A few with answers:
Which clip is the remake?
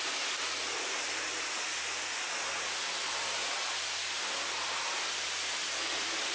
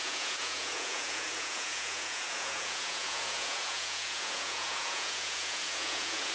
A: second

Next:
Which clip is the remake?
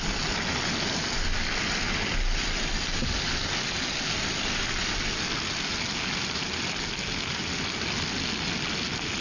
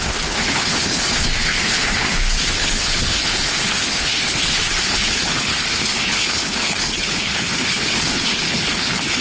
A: second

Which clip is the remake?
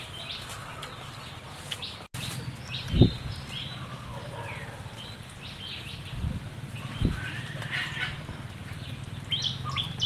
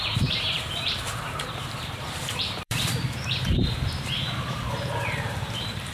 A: second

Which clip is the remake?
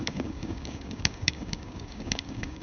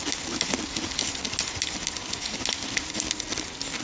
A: first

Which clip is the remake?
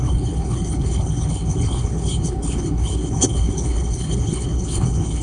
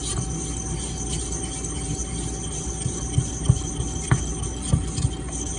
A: first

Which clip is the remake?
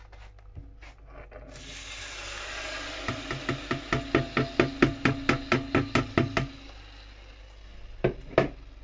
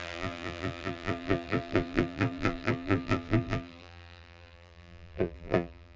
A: second